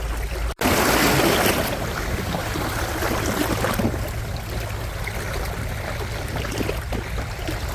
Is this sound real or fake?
real